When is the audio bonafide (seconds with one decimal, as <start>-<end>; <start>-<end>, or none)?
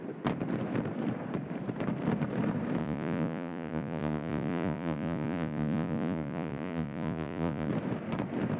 0.0-2.8; 7.7-8.6